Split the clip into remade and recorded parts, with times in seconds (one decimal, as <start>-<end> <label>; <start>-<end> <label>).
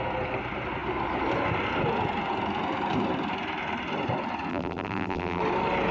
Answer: 0.0-4.5 recorded; 4.5-5.4 remade; 5.4-5.9 recorded